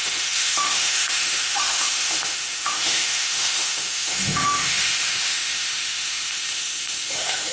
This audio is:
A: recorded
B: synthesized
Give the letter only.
B